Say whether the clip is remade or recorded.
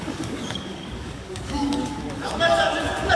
remade